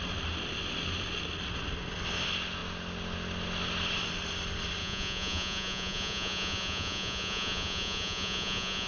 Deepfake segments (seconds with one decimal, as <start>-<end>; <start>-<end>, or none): 4.8-8.9

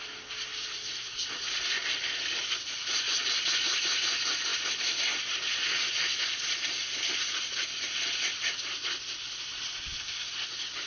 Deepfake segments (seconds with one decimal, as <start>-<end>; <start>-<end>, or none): none

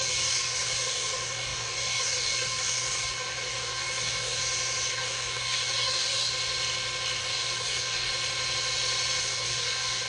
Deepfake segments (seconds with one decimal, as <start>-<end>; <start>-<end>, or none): 0.0-4.4; 4.9-6.3; 7.2-8.1; 9.2-10.1

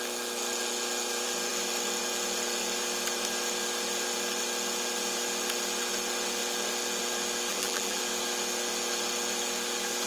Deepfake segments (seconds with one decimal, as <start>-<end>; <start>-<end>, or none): 7.5-8.0

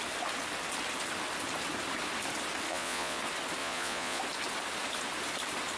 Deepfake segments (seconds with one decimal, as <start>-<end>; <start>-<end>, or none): 2.7-3.2; 3.6-4.2

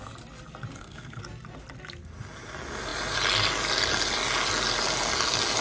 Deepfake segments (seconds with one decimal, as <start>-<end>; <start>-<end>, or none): 0.7-1.2

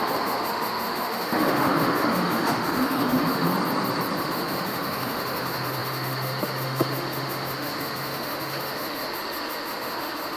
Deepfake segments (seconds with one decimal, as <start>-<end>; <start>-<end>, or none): 0.0-3.5; 4.2-10.4